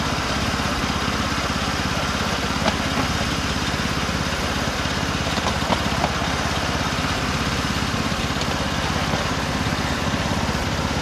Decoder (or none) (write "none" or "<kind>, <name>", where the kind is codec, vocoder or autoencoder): none